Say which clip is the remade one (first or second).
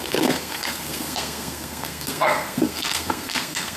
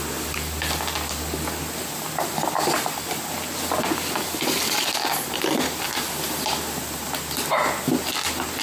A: first